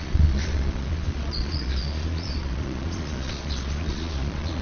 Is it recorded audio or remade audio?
remade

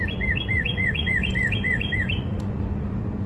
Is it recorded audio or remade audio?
remade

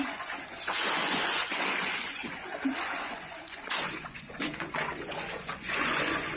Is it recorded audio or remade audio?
remade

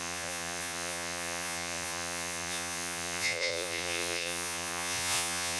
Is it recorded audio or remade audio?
remade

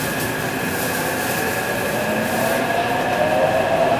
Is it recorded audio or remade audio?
recorded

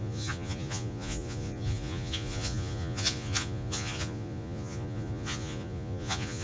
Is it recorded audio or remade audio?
remade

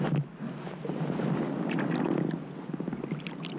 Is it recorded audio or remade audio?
recorded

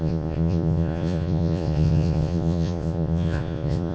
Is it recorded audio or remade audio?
remade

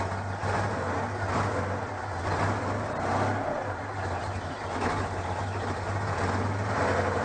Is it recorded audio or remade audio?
recorded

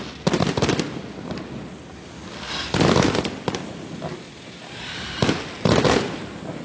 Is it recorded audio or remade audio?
recorded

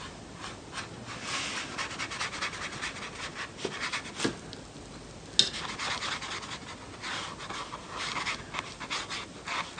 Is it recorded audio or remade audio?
recorded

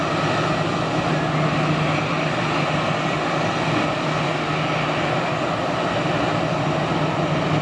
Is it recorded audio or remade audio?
recorded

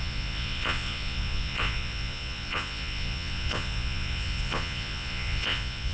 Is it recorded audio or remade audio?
remade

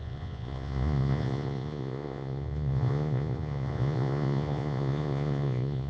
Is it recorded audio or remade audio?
remade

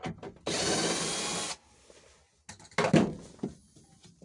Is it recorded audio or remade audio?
recorded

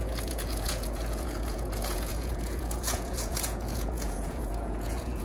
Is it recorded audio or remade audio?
remade